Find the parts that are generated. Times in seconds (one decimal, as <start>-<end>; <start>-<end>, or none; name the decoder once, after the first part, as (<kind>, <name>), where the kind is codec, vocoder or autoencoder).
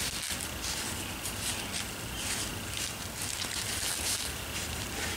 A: none